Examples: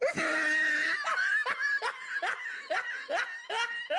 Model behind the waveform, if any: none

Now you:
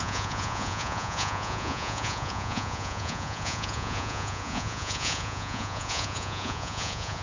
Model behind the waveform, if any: vocoder, Vocos